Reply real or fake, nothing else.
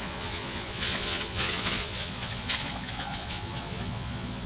fake